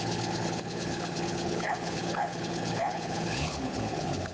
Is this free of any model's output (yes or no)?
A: no